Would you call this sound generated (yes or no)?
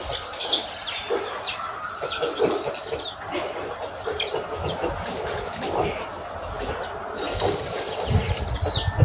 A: no